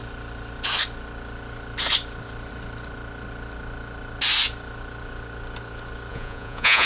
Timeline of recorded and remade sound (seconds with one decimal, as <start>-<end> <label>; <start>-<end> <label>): 0.0-6.1 recorded; 6.1-6.9 remade